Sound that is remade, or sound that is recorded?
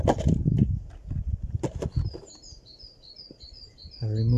recorded